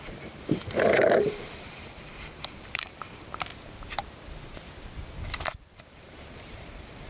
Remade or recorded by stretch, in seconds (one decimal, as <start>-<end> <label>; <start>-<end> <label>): 0.0-3.5 remade; 3.5-5.8 recorded; 5.8-7.1 remade